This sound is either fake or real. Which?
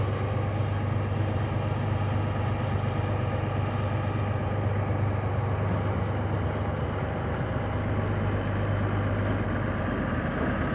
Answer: real